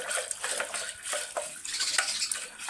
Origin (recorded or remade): remade